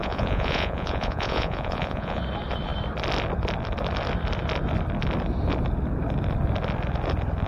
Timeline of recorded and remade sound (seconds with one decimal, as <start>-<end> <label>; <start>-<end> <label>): 0.0-2.2 remade; 2.2-7.5 recorded